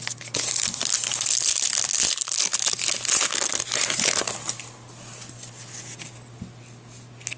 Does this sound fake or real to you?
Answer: real